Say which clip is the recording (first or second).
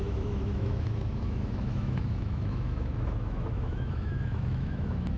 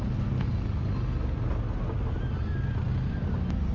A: second